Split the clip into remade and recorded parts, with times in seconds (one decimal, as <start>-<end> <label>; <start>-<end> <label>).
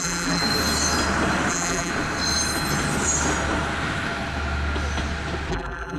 0.0-0.4 remade; 0.4-1.5 recorded; 1.5-1.9 remade; 1.9-5.5 recorded; 5.5-6.0 remade